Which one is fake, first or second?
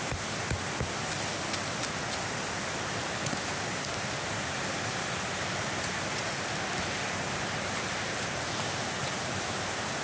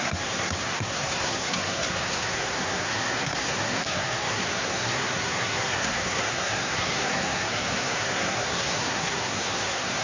second